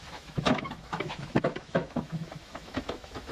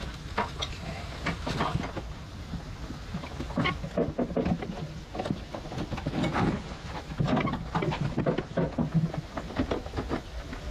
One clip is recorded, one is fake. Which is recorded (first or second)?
second